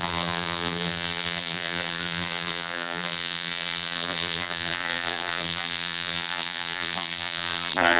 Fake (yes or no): yes